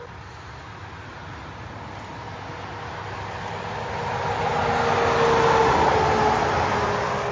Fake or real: real